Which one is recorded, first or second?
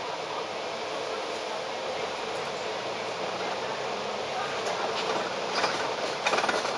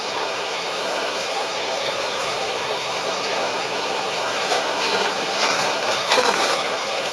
first